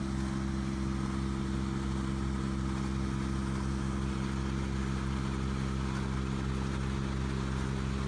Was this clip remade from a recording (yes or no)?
no